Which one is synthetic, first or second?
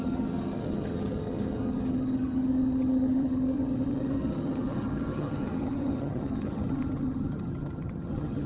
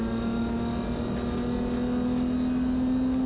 first